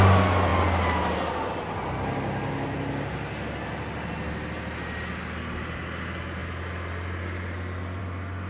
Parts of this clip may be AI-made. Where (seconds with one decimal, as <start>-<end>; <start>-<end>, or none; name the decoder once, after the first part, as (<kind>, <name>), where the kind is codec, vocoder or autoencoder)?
none